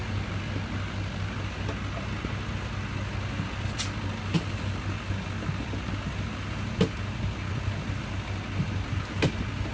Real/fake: real